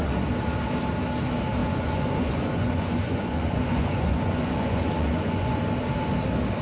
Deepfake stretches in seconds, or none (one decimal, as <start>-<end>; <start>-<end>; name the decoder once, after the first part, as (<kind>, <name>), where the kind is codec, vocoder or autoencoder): 1.6-5.6 (vocoder, Vocos)